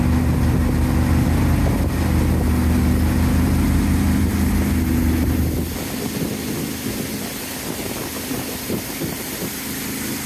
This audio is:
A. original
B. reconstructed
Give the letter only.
A